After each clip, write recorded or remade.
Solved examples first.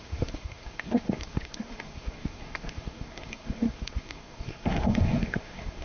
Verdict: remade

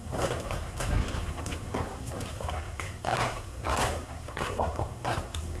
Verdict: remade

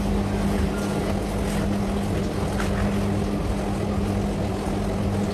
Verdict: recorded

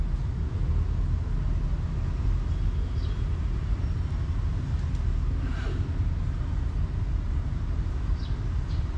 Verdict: recorded